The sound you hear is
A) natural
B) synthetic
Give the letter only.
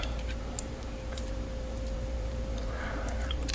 B